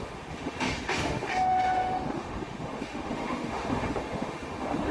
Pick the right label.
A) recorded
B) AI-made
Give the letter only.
B